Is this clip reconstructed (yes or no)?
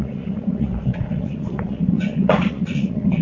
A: yes